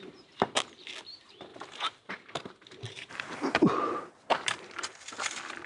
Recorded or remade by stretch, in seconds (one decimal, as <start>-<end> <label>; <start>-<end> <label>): 0.0-1.5 recorded; 1.5-4.9 remade; 4.9-5.7 recorded